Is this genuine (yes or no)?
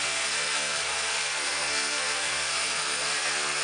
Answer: no